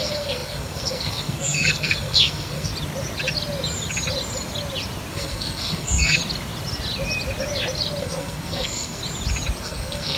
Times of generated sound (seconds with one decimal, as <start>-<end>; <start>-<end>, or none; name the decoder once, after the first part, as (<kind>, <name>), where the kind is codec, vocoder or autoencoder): 0.0-2.7 (codec, SNAC); 5.1-6.2; 8.0-9.0; 9.6-10.2